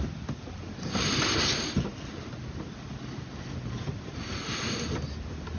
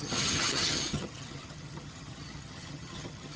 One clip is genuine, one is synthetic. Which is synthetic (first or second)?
second